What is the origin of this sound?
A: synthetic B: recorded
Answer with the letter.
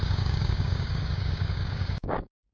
A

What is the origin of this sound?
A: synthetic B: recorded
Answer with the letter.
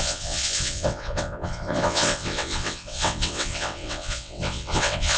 A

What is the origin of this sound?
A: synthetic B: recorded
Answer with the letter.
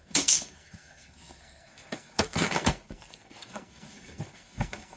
A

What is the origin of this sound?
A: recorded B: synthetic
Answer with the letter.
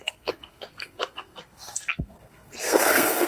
B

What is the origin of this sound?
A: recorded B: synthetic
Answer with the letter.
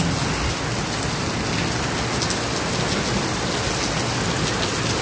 A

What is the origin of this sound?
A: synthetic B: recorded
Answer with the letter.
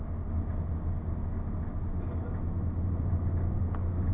B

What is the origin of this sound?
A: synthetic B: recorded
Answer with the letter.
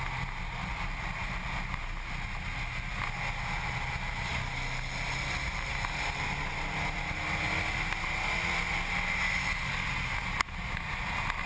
B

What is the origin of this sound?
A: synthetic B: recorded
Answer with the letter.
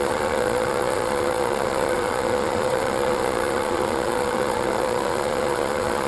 A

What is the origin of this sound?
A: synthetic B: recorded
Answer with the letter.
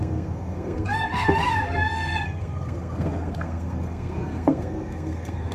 A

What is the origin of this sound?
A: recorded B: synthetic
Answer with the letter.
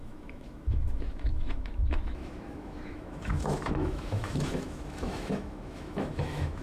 B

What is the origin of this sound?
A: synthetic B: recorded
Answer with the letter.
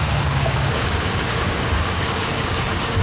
A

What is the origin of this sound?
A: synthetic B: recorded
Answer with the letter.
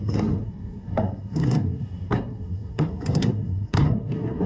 A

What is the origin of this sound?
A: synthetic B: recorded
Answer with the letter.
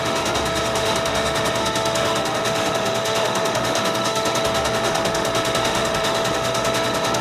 A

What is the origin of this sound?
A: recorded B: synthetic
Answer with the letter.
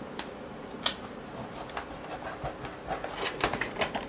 A